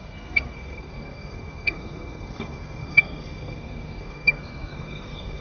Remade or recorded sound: remade